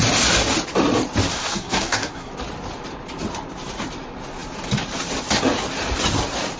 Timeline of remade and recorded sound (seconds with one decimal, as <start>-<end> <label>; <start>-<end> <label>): 0.0-1.3 recorded; 1.3-2.3 remade; 2.3-6.6 recorded